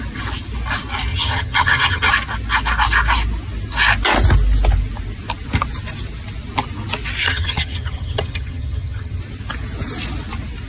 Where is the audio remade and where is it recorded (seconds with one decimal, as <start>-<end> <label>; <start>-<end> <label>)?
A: 0.0-1.1 recorded; 1.1-2.1 remade; 2.1-7.2 recorded; 7.2-9.2 remade; 9.2-10.7 recorded